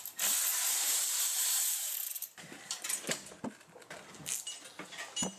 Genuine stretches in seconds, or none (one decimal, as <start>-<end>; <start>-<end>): 0.0-0.5; 3.3-5.4